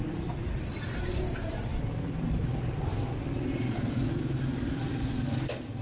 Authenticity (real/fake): fake